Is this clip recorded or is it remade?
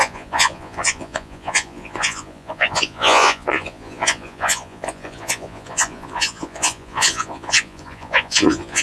remade